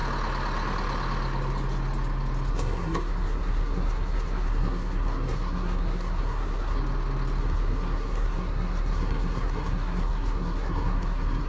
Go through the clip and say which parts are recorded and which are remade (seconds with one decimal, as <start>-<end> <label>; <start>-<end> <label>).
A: 0.0-2.5 recorded; 2.5-6.8 remade; 6.8-7.4 recorded; 7.4-11.5 remade